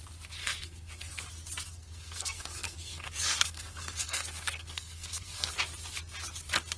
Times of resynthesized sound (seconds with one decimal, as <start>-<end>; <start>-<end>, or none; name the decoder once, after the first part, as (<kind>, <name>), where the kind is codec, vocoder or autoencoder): 0.4-1.2 (codec, SNAC); 1.7-5.5